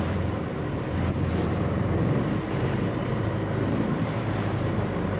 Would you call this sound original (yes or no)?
no